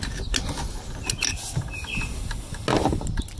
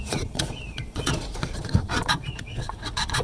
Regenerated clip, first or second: second